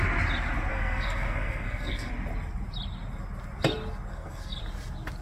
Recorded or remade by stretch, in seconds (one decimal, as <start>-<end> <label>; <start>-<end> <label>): 0.0-0.7 recorded; 0.7-2.1 remade; 2.1-4.1 recorded; 4.1-4.6 remade; 4.6-5.2 recorded